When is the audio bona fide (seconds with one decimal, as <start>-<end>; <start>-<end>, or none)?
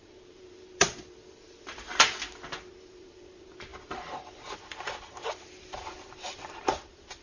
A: 2.1-2.7